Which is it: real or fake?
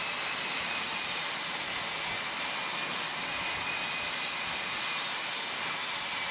real